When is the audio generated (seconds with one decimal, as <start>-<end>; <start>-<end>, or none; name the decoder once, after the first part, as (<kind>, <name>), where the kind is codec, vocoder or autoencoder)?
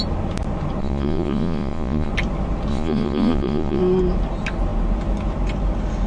0.8-2.1 (vocoder, Vocos); 2.7-3.8